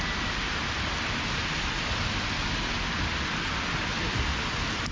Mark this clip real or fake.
real